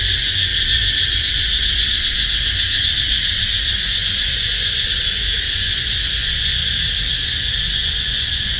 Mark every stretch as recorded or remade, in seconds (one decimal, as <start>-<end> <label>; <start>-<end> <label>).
0.0-6.6 remade; 6.6-7.6 recorded; 7.6-8.6 remade